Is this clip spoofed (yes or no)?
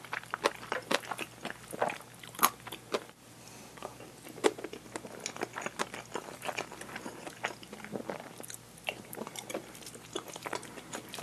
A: no